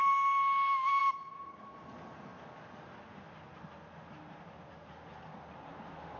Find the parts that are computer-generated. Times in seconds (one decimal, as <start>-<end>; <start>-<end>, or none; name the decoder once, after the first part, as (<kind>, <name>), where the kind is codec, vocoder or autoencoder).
none